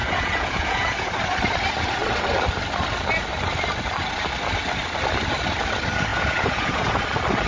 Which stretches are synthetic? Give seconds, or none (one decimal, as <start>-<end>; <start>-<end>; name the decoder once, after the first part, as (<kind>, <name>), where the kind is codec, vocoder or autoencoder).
0.0-1.1 (vocoder, Vocos); 6.1-7.0